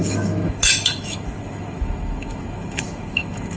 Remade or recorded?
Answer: remade